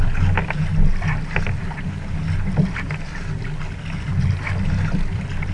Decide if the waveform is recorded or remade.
recorded